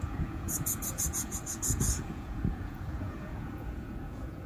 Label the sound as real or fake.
fake